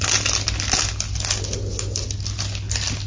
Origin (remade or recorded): recorded